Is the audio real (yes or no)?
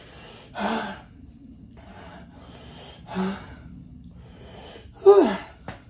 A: yes